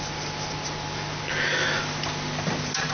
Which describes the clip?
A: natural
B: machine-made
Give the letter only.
A